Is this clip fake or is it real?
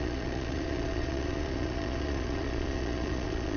fake